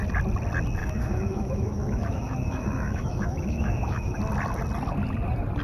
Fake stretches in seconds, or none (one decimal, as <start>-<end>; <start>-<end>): 0.8-4.2